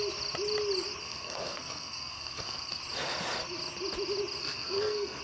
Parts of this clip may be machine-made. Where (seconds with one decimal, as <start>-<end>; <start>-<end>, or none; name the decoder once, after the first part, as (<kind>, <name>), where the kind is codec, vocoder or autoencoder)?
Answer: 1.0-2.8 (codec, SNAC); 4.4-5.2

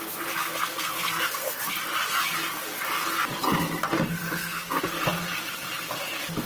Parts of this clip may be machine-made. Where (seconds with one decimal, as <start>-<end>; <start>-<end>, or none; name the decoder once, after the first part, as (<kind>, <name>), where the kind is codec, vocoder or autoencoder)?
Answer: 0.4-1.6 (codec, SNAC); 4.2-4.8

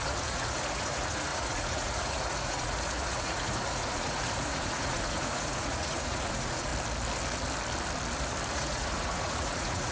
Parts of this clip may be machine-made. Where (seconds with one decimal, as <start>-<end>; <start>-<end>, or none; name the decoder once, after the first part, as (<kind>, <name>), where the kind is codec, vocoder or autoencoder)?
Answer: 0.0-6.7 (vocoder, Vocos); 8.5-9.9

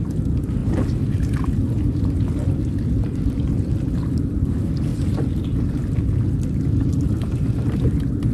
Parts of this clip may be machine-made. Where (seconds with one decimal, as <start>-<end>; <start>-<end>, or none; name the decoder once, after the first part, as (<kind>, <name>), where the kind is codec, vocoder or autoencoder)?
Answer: 0.0-0.6 (vocoder, BigVGAN v2); 2.6-8.3

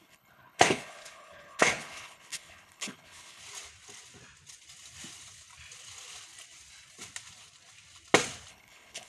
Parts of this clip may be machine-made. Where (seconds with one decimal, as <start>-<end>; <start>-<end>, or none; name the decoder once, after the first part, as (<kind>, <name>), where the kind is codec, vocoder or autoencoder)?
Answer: 0.0-3.4 (codec, HILCodec); 8.5-9.1